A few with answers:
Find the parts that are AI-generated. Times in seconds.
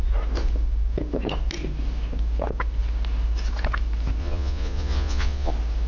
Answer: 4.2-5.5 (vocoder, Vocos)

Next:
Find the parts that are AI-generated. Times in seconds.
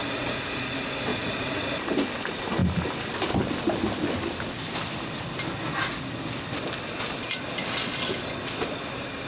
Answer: 0.0-0.6 (vocoder, Vocos); 1.1-1.7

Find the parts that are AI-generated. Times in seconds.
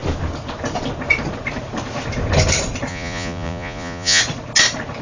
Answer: 2.9-4.2 (vocoder, Vocos)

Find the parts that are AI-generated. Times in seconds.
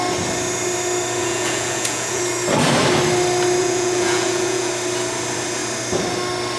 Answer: 1.2-2.2 (vocoder, Vocos); 3.6-4.7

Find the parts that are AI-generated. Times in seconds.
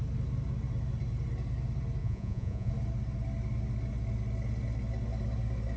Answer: 2.0-2.7 (vocoder, Vocos)